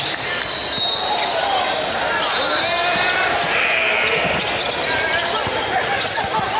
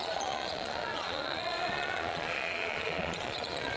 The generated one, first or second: second